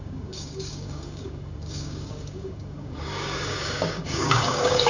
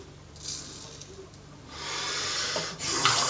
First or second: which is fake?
first